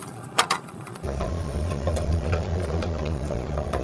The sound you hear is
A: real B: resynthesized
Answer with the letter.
B